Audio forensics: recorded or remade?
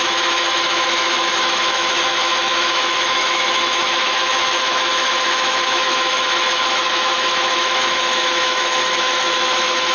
remade